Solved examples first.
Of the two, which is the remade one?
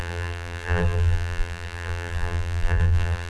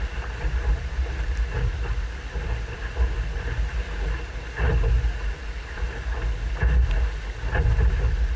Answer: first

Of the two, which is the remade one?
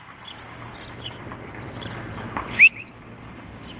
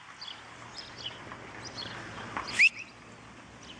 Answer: first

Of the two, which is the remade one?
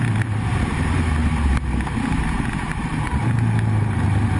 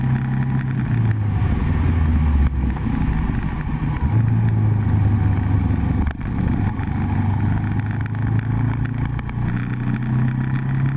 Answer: first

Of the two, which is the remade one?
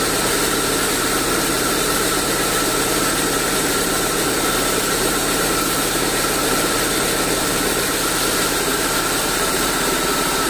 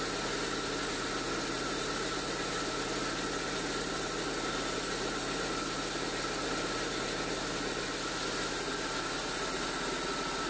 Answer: first